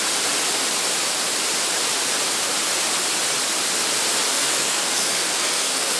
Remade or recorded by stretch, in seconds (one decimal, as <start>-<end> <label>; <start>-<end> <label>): 0.0-4.3 recorded; 4.3-6.0 remade